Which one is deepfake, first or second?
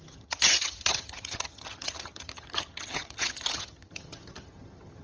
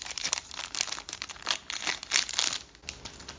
first